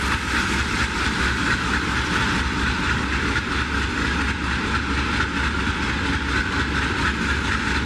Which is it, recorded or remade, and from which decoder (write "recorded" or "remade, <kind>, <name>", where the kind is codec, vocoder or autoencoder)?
recorded